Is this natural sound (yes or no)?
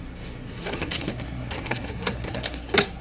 no